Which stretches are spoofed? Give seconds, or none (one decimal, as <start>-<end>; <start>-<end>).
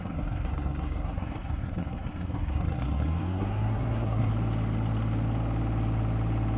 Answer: 0.0-4.3